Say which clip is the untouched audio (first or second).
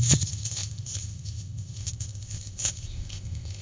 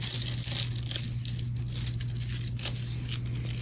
second